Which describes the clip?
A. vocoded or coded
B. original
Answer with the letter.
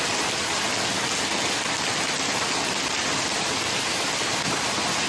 B